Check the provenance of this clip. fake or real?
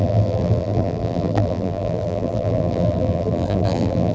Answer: fake